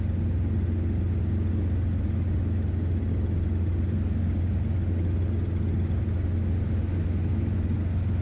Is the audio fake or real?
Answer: real